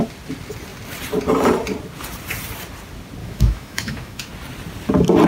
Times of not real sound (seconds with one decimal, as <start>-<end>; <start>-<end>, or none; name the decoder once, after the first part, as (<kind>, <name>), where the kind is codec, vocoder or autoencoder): 3.2-4.3 (autoencoder, DAC-VAE)